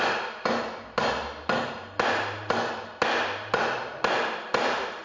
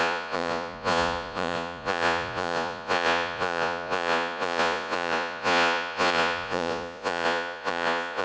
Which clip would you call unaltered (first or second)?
first